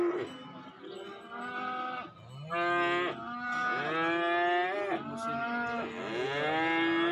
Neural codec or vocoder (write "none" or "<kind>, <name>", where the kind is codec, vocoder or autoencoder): none